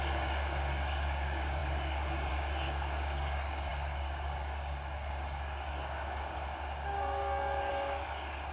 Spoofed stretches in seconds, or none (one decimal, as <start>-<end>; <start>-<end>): 0.0-8.5